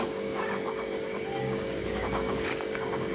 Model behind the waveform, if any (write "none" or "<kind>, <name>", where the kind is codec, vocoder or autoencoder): codec, DAC